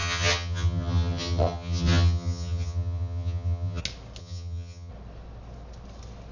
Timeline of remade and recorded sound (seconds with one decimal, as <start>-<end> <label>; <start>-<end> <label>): 0.0-3.8 remade; 3.8-4.2 recorded; 4.2-4.9 remade; 4.9-6.3 recorded